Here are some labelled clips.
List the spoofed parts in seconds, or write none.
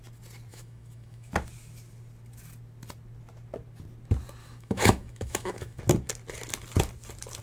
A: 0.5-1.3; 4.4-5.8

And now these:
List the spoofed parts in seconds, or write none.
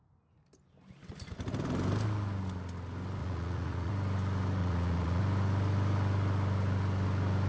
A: 3.2-3.9; 4.6-5.2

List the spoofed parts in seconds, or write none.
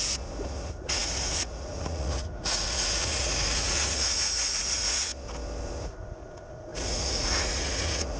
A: 0.0-5.1; 5.8-8.2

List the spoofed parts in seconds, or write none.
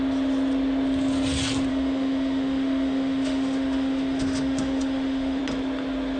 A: 1.7-5.4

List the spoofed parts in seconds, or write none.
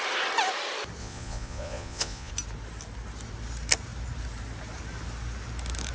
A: 1.0-2.3